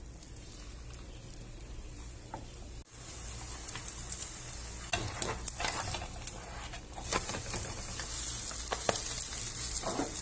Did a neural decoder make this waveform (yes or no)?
no